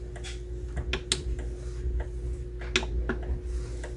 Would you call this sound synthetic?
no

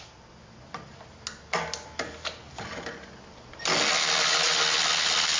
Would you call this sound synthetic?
no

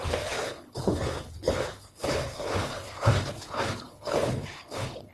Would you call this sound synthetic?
yes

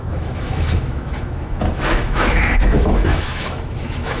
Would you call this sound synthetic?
yes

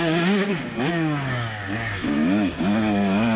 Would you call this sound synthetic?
yes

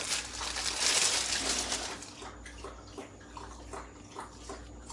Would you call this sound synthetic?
no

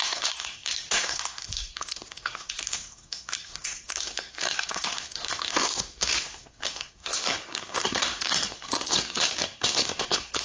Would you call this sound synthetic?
yes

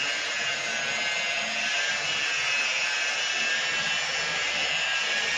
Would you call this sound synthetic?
no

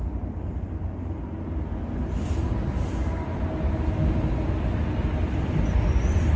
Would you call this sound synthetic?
no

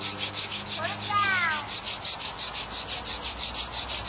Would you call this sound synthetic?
no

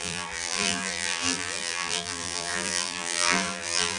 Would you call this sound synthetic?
yes